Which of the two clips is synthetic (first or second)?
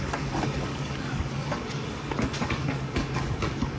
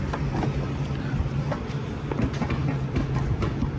first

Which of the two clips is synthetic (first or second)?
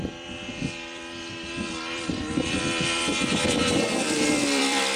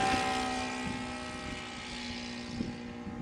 first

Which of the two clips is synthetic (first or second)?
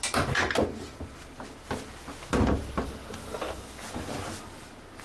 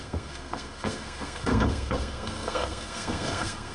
second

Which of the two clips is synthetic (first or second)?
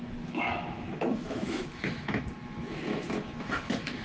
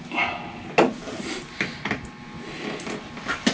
first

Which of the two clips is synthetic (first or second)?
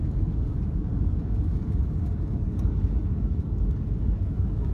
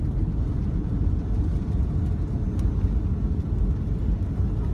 first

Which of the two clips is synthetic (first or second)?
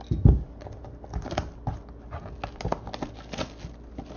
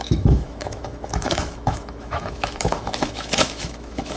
second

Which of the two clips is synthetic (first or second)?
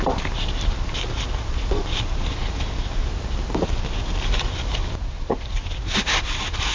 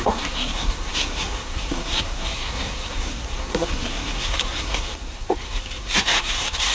second